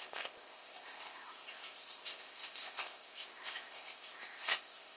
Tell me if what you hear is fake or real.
fake